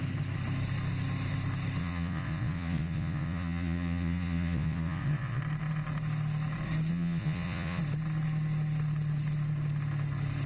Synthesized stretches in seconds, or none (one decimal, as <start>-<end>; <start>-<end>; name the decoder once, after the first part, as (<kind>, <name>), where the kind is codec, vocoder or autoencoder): 1.8-5.4 (vocoder, Vocos); 6.9-7.8